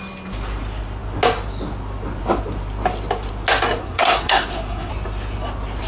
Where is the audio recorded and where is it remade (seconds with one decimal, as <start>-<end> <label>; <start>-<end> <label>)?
0.0-3.8 recorded; 3.8-4.9 remade; 4.9-5.9 recorded